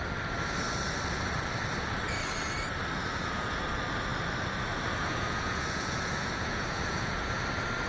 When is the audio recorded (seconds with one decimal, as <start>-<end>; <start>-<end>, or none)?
0.0-3.1; 3.6-5.0; 7.4-7.9